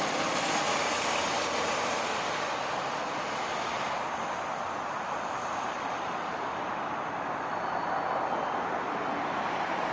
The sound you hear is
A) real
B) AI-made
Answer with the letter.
A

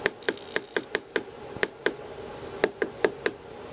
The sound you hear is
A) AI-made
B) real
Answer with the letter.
B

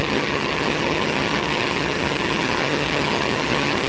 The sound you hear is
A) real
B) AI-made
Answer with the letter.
B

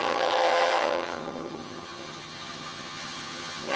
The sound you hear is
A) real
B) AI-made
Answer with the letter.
B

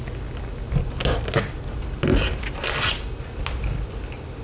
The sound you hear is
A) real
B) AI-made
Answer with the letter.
A